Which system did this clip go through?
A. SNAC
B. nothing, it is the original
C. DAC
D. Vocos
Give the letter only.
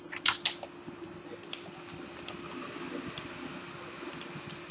B